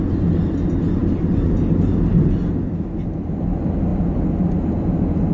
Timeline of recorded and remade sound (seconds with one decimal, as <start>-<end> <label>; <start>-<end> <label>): 0.0-5.3 recorded